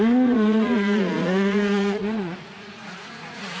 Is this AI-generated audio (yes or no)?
yes